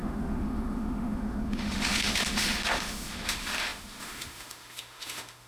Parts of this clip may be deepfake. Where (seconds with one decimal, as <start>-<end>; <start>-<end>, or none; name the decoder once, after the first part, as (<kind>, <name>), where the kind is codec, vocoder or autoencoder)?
0.0-5.5 (autoencoder, DAC-VAE)